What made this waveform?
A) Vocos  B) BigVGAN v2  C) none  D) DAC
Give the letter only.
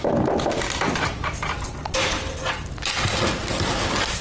C